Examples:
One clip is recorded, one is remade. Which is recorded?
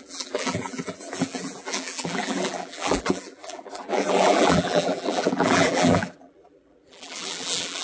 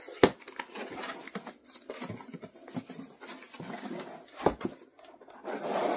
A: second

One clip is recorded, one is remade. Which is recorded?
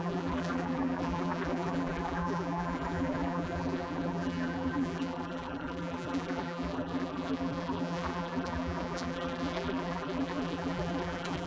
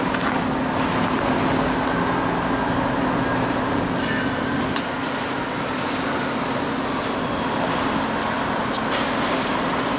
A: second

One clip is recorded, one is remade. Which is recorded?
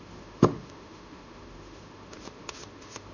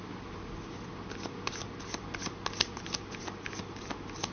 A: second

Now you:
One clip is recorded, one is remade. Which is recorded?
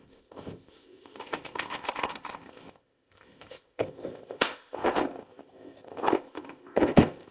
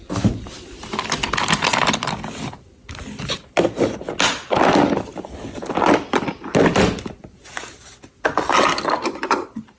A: second